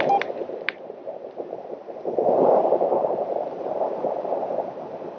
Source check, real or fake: fake